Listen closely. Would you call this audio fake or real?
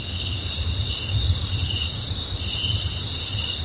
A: fake